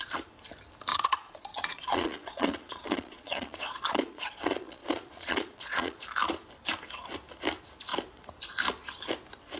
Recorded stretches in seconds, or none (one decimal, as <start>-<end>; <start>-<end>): 0.0-0.9; 6.0-9.6

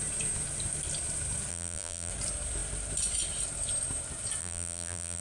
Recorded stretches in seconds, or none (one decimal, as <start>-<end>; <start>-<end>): 0.0-1.5; 2.1-4.4

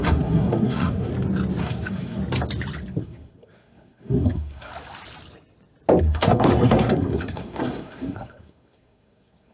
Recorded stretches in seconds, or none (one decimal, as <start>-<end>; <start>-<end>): 1.1-1.6; 2.2-3.0; 4.7-6.0

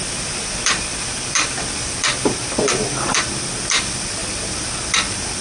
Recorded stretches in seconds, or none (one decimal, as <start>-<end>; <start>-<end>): none

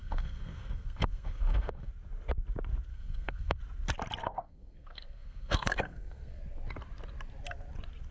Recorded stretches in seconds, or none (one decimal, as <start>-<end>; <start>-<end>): 1.9-2.9; 3.6-4.2; 6.4-8.1